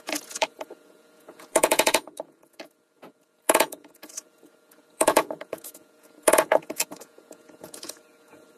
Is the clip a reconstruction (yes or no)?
yes